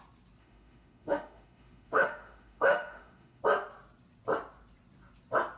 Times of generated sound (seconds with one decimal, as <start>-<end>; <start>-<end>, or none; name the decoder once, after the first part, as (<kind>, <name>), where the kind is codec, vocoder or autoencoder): 0.4-3.4 (autoencoder, DAC-VAE)